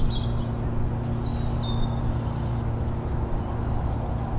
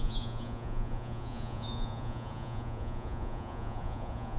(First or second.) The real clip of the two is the first